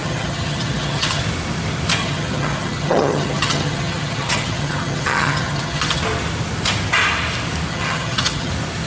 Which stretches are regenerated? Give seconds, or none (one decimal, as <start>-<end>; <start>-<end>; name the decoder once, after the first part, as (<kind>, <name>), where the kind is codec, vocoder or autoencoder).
0.0-1.2 (vocoder, HiFi-GAN); 2.0-6.0; 7.7-8.5